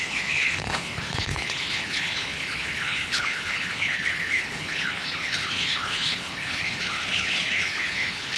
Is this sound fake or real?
fake